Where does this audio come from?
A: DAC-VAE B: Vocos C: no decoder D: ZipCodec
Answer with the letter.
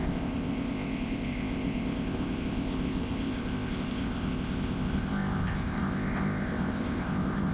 D